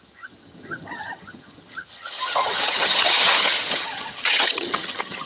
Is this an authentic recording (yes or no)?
no